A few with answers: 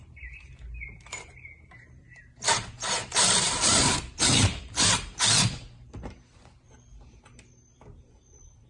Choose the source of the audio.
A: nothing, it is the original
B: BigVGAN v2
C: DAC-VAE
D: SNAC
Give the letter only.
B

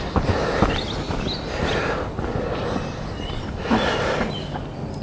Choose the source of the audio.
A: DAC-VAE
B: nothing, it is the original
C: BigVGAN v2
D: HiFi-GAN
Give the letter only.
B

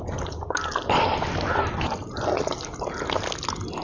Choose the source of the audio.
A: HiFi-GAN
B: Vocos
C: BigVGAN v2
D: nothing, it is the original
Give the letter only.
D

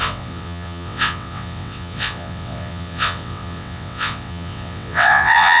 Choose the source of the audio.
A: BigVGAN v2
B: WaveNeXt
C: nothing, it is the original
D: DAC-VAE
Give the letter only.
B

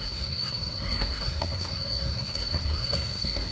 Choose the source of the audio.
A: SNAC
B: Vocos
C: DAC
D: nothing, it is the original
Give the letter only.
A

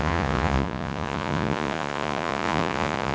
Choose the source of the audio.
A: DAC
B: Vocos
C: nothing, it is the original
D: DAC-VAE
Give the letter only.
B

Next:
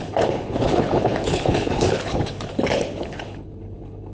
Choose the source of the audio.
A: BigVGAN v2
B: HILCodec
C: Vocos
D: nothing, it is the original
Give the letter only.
B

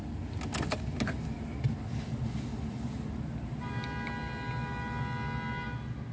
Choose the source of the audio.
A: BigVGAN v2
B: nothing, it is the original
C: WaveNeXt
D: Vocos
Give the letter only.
B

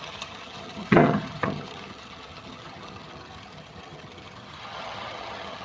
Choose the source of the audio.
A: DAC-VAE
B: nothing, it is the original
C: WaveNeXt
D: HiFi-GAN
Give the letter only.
D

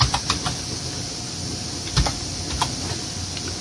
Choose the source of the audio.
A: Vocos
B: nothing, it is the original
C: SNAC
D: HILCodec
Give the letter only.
B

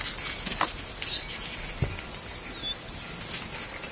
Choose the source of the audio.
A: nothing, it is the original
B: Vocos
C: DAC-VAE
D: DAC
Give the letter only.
A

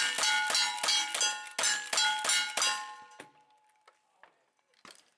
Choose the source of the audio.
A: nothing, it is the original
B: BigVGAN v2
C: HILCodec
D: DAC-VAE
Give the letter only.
A